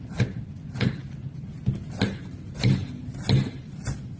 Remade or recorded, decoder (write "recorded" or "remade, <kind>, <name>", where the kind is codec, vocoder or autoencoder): recorded